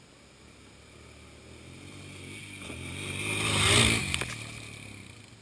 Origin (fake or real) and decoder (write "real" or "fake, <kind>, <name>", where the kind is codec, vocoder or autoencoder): real